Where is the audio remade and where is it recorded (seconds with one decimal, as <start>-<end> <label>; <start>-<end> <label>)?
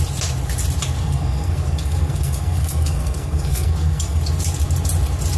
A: 0.0-1.0 recorded; 1.0-4.2 remade; 4.2-5.4 recorded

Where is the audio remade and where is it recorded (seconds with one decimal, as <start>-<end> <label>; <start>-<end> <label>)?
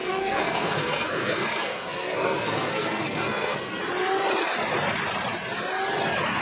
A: 0.0-3.8 remade; 3.8-6.4 recorded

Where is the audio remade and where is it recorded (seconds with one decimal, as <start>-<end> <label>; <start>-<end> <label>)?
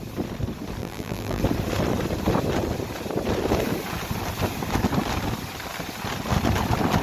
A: 0.0-0.8 recorded; 0.8-1.4 remade; 1.4-7.0 recorded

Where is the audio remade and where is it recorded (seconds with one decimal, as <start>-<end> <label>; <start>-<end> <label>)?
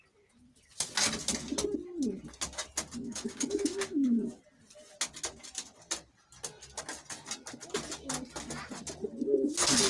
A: 0.0-3.0 recorded; 3.0-4.4 remade; 4.4-9.9 recorded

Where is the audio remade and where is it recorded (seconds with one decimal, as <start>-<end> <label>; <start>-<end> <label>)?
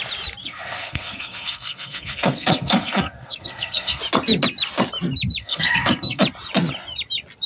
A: 0.0-0.4 recorded; 0.4-4.0 remade; 4.0-5.4 recorded; 5.4-6.2 remade; 6.2-7.5 recorded